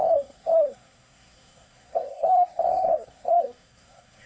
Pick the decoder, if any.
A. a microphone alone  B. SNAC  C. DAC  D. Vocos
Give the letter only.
B